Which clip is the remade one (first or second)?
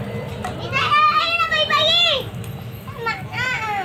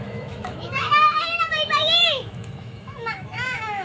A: second